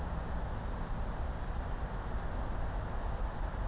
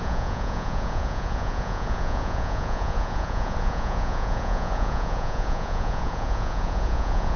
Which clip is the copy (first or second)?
second